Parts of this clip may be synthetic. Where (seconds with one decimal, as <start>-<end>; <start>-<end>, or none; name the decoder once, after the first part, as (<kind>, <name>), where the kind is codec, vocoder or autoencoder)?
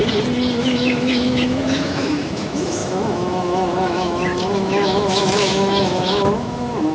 0.6-6.9 (autoencoder, DAC-VAE)